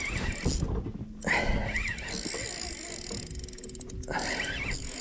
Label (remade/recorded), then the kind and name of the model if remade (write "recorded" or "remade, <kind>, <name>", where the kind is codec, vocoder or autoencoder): recorded